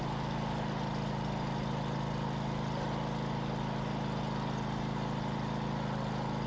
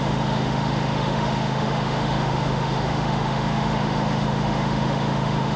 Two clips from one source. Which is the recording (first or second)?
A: first